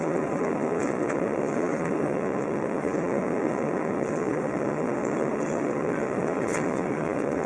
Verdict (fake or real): fake